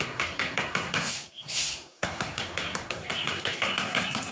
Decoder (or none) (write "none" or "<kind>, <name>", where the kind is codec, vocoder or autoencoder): codec, SNAC